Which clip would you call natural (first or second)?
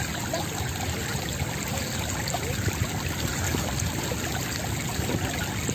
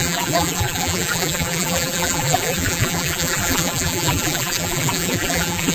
first